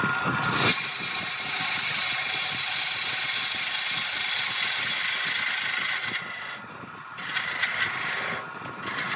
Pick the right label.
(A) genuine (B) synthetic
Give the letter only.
A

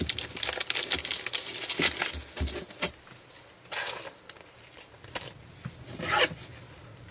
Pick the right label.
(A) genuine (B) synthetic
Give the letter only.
A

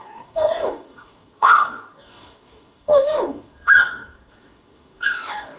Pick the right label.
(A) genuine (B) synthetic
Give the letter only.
B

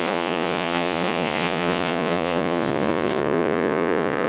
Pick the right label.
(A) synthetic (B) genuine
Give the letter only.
A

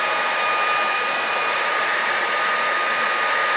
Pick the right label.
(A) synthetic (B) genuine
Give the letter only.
A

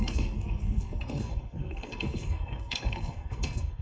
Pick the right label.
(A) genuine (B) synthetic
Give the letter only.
B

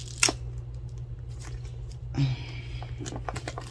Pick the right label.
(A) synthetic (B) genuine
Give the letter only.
B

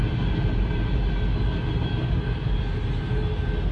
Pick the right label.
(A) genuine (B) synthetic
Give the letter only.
A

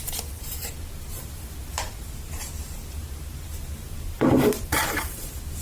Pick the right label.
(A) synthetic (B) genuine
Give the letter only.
A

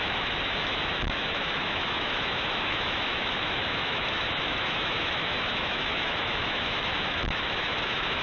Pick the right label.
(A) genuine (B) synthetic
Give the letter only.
B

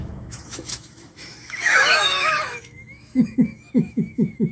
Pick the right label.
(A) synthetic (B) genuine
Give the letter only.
A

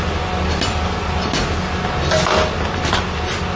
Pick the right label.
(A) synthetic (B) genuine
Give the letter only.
B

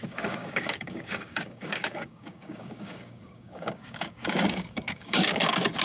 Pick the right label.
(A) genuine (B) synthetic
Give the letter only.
B